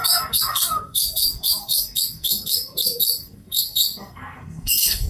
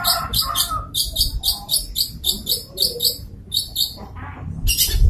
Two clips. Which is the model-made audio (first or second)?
first